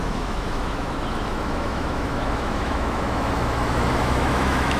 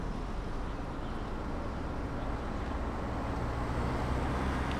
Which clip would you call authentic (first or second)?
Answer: second